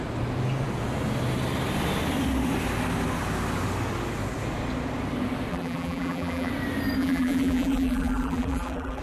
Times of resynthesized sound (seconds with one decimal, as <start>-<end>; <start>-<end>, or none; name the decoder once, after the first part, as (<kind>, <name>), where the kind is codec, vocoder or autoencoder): 5.5-6.5 (vocoder, BigVGAN v2); 7.0-9.0